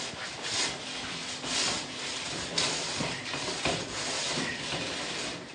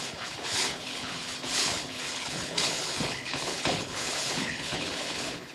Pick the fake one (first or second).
second